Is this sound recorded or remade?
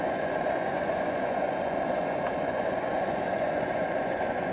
remade